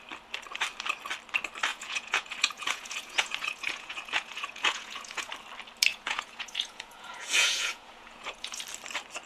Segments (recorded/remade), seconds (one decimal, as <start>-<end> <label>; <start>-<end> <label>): 0.0-1.7 recorded; 1.7-5.3 remade; 5.3-5.9 recorded; 5.9-8.6 remade; 8.6-9.3 recorded